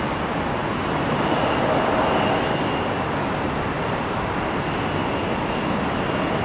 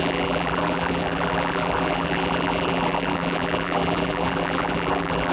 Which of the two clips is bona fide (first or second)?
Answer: first